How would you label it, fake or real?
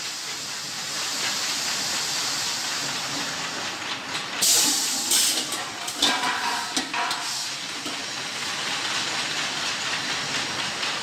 real